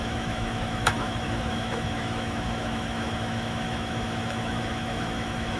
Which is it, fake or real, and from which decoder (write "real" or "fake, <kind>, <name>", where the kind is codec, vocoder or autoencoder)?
fake, autoencoder, DAC-VAE